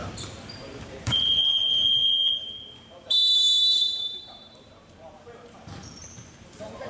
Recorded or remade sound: remade